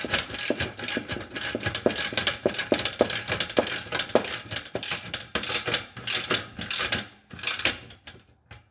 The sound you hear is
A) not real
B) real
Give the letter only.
B